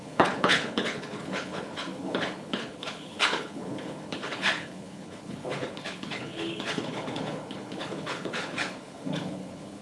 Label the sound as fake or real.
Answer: fake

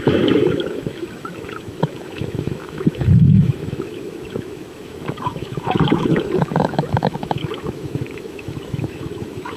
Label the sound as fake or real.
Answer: fake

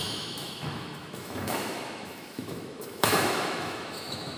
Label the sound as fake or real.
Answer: fake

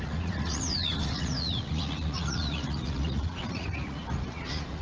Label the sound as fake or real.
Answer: fake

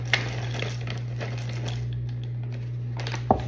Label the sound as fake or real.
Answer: real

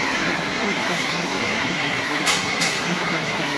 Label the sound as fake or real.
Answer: fake